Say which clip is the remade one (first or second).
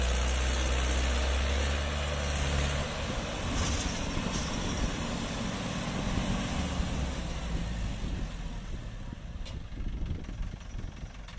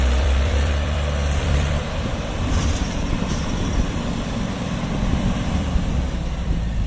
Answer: second